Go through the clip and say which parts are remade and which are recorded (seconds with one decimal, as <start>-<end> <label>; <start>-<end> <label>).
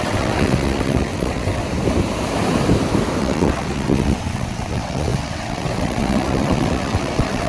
0.0-1.6 remade; 1.6-3.2 recorded; 3.2-7.5 remade